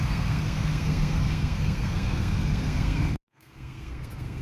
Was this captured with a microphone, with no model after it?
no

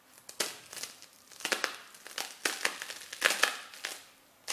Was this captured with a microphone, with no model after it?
yes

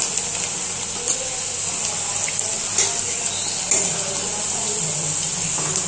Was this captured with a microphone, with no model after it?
yes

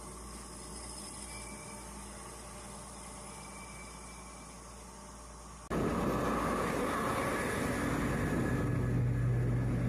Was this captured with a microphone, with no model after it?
yes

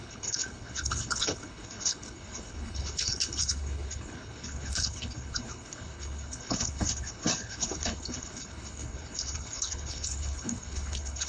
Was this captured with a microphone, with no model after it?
no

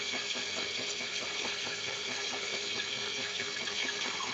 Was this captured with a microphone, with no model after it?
no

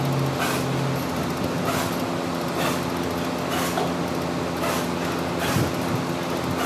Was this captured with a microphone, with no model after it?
yes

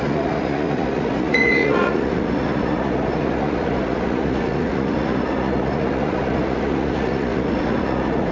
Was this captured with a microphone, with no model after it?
no